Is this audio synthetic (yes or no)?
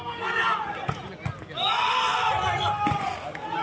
no